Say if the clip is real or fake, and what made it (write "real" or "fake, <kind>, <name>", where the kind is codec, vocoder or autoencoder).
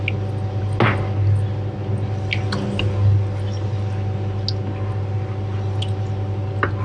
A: real